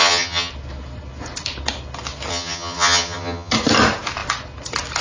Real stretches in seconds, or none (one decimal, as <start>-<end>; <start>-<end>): 0.5-2.3; 3.5-5.0